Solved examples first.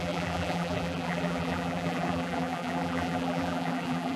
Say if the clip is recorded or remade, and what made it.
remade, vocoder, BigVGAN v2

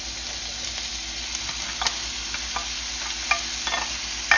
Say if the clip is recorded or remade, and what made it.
recorded